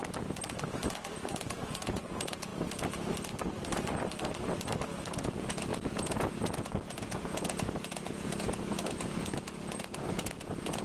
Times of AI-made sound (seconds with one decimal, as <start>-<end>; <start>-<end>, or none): 1.4-2.5; 5.2-10.8